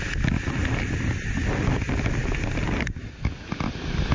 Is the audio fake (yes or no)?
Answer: no